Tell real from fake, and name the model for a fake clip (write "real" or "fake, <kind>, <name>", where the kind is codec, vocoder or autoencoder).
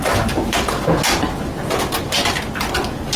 real